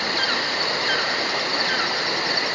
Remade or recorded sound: remade